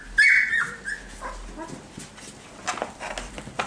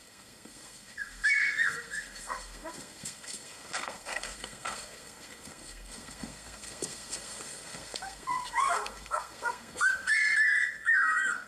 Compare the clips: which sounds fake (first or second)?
second